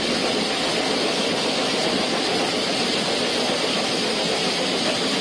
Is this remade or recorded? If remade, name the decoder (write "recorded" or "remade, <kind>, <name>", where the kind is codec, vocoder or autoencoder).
recorded